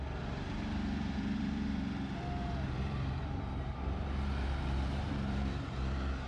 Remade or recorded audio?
remade